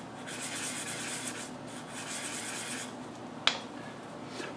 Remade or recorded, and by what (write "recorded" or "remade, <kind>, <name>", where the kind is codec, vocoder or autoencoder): recorded